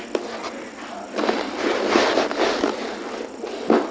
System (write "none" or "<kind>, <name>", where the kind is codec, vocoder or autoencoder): none